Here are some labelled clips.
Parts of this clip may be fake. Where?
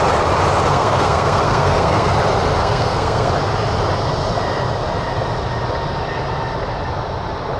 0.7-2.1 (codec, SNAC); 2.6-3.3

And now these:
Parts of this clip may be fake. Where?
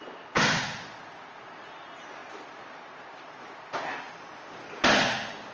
none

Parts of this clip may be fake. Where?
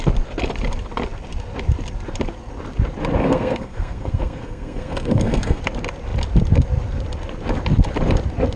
3.2-5.6 (codec, SNAC)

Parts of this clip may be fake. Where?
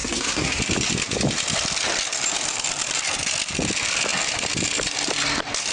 0.0-0.6 (codec, SNAC)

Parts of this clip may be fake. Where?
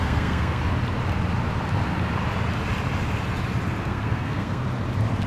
0.0-0.6 (codec, SNAC); 3.8-4.6